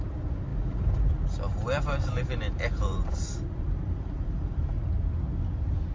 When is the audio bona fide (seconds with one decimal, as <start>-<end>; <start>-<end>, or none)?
0.0-1.5; 5.0-5.9